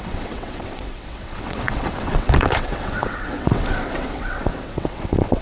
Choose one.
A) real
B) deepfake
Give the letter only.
B